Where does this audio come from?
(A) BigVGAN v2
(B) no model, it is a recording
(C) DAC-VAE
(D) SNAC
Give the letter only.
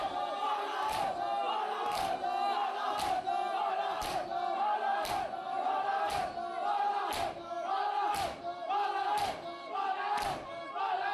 B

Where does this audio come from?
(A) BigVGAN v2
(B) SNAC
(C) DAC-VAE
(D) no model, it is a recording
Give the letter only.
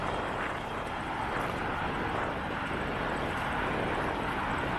D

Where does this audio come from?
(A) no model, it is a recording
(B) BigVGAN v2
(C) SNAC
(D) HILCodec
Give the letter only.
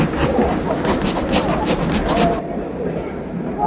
A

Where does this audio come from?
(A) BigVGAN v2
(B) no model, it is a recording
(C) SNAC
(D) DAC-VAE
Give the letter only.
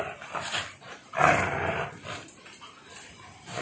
A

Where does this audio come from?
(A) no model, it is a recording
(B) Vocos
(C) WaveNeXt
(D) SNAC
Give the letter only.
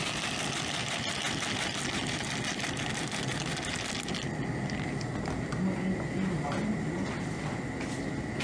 A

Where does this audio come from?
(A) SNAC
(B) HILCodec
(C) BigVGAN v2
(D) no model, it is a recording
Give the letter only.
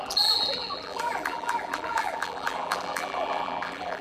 C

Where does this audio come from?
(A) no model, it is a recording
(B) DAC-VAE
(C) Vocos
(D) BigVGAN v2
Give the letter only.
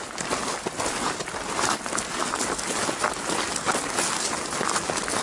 A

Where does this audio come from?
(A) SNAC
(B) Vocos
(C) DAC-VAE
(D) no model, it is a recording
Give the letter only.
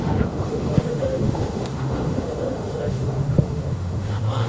C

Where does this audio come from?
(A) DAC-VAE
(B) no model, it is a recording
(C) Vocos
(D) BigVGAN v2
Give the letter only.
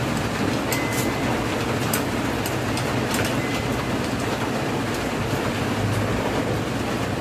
B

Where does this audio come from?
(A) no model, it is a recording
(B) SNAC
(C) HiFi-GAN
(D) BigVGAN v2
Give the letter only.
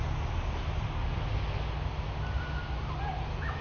A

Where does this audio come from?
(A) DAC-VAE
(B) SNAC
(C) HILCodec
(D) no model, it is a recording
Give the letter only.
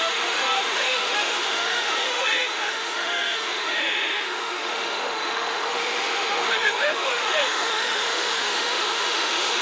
A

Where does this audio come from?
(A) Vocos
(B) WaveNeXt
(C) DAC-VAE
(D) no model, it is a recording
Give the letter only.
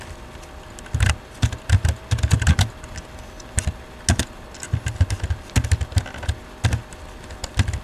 D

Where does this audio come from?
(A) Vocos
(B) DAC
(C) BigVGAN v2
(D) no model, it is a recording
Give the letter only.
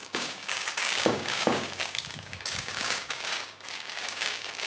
B